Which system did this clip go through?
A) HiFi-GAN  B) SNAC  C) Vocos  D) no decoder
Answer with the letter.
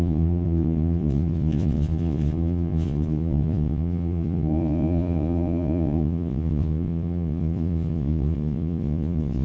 C